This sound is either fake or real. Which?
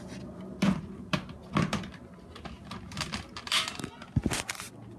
real